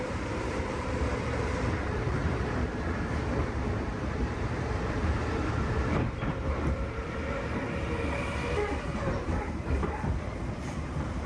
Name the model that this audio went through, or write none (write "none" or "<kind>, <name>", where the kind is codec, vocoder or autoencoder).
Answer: vocoder, BigVGAN v2